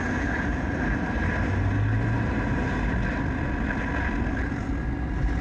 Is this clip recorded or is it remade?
recorded